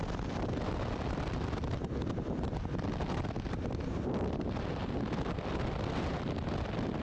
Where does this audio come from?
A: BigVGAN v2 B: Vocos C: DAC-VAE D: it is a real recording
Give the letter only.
A